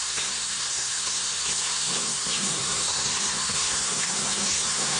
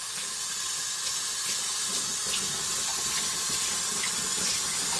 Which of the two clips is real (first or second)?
second